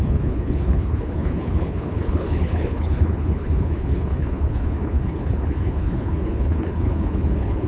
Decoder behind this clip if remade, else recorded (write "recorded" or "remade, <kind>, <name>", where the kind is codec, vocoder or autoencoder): remade, codec, HILCodec